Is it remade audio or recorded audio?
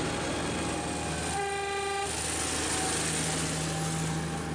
recorded